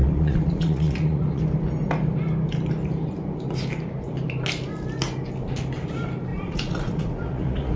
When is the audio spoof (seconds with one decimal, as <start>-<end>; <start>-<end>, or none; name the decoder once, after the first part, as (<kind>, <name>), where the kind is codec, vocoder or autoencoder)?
0.0-1.4 (vocoder, Vocos); 6.3-7.8